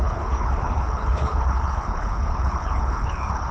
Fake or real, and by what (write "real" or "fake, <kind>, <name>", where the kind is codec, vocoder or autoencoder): fake, codec, HILCodec